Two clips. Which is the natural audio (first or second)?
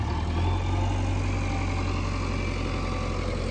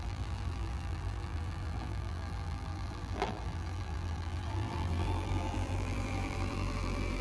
first